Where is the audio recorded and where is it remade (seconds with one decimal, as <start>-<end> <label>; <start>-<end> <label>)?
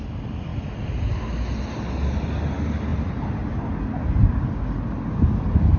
0.0-5.8 recorded